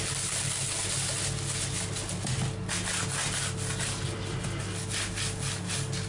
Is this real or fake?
real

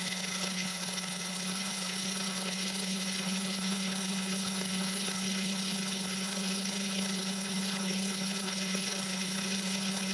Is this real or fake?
fake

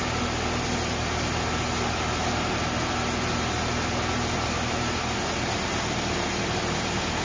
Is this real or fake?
real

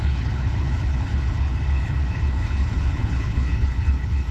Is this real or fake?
fake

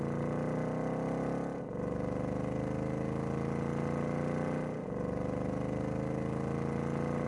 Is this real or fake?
real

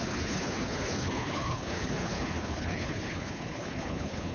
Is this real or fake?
fake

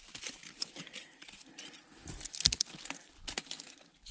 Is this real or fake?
real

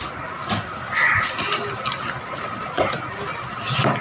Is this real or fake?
real